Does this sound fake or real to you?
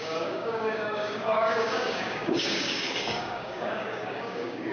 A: fake